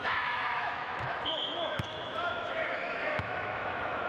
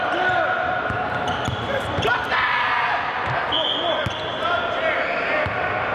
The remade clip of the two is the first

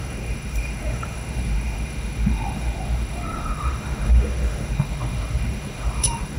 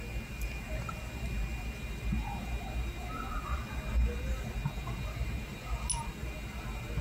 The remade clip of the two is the first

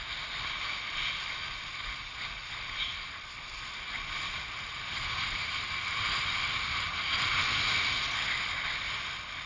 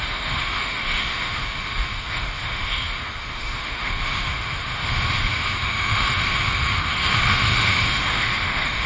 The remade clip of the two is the second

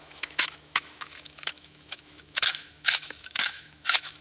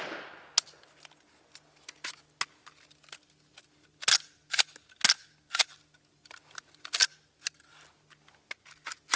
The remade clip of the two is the first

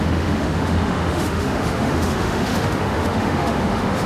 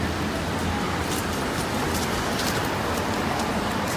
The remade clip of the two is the first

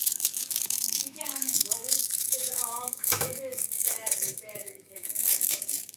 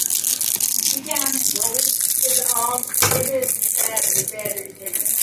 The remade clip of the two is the first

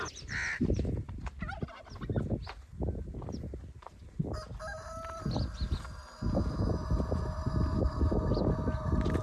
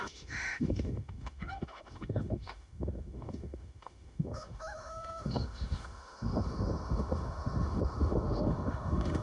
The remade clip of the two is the second